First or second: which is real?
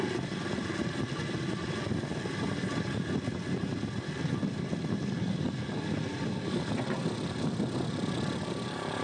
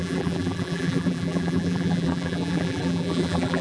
first